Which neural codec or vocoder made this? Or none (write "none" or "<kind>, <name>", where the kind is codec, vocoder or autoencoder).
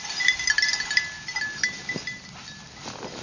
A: none